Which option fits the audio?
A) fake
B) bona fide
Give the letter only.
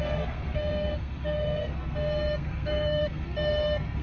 A